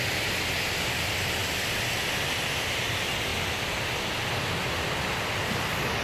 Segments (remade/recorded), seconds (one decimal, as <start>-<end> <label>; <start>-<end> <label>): 0.0-6.0 recorded